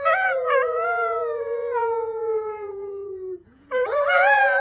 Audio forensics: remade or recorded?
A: remade